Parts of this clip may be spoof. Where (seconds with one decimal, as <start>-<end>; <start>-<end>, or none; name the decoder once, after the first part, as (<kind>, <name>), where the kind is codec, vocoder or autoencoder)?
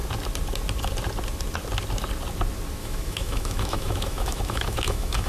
2.8-5.3 (autoencoder, DAC-VAE)